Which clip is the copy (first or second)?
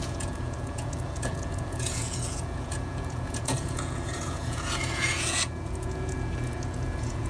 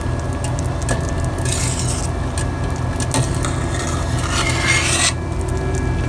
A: first